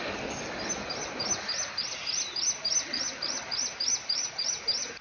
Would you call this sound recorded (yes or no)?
yes